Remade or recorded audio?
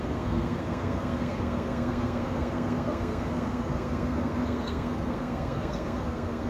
remade